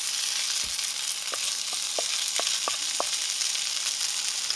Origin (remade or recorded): recorded